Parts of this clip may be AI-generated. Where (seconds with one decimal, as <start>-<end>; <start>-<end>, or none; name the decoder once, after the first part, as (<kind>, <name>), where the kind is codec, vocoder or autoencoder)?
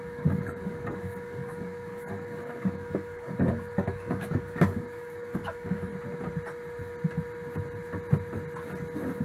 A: 0.0-5.9 (codec, DAC)